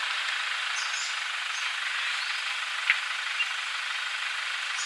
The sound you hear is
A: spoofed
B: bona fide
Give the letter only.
B